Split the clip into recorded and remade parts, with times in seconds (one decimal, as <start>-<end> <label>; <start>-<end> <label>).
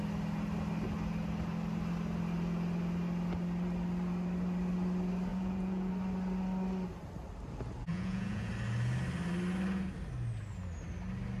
0.0-5.3 recorded; 5.3-5.9 remade; 5.9-7.9 recorded; 7.9-8.5 remade; 8.5-11.4 recorded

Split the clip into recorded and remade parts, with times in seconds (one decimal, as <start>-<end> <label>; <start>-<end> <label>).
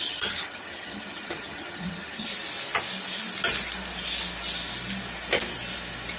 0.0-2.3 remade; 2.3-6.2 recorded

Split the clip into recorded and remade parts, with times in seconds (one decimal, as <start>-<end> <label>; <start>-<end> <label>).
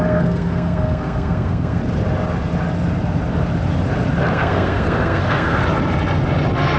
0.0-1.8 remade; 1.8-4.3 recorded; 4.3-5.6 remade; 5.6-6.8 recorded